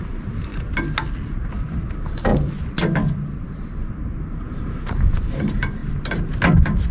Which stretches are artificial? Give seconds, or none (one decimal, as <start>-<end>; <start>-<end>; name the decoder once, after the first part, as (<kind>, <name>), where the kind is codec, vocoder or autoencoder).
0.0-0.5 (vocoder, BigVGAN v2); 1.9-2.3; 3.8-5.8